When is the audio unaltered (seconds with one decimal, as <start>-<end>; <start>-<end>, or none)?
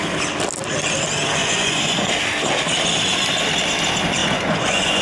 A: 0.0-1.4; 2.1-4.2